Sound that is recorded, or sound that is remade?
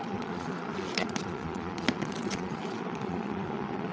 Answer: remade